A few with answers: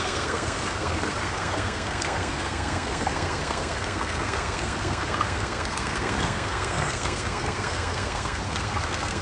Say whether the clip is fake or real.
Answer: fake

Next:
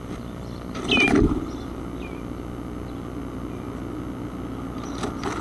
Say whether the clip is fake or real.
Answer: real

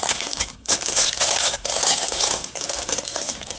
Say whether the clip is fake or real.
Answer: fake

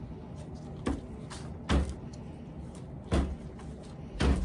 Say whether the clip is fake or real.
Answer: real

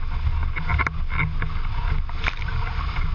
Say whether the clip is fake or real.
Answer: real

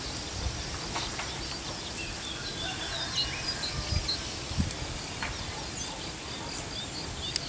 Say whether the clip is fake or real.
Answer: real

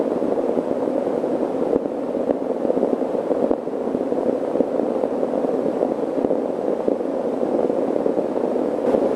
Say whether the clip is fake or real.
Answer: real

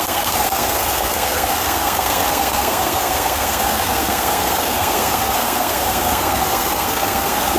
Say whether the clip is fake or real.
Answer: fake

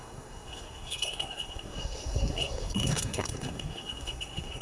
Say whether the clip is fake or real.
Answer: fake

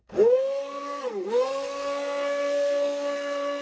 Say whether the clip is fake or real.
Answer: fake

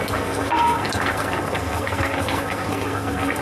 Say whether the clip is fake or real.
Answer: fake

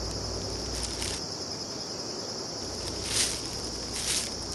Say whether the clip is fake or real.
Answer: real